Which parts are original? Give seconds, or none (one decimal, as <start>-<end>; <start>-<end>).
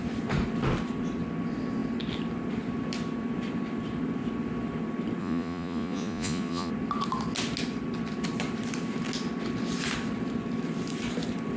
0.0-5.2; 6.7-11.6